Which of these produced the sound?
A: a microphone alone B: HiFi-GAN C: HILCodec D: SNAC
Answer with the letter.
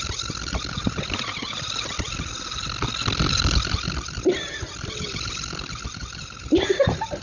A